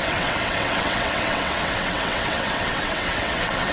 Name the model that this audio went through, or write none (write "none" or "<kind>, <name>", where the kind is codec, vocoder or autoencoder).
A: vocoder, WaveNeXt